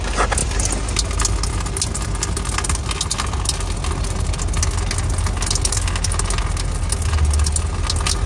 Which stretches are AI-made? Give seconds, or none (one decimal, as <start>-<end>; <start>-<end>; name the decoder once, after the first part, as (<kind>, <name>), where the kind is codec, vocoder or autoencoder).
none